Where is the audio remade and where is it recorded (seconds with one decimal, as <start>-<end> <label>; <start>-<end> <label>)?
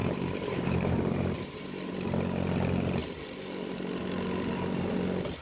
0.0-1.9 remade; 1.9-5.4 recorded